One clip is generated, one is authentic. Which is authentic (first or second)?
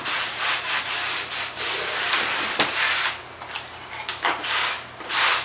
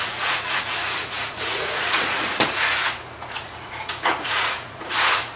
first